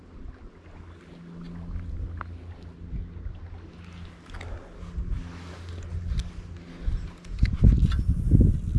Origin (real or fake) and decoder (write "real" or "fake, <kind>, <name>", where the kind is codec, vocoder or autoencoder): real